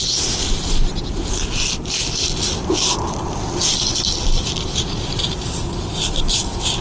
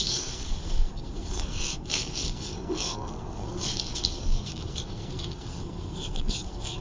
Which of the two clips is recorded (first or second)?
first